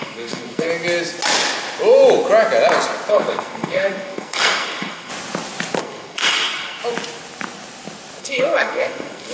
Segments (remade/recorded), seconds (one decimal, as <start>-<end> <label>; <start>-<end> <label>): 0.0-0.7 remade; 0.7-3.1 recorded; 3.1-5.1 remade; 5.1-5.8 recorded; 5.8-6.8 remade; 6.8-8.2 recorded; 8.2-9.3 remade